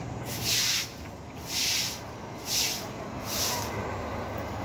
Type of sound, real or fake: real